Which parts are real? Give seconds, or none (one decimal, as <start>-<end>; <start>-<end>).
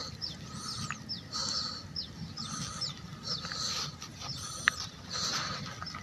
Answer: 0.0-4.1; 5.6-6.0